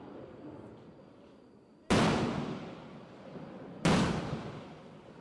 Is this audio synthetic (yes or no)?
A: no